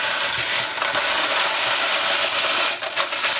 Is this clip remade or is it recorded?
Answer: recorded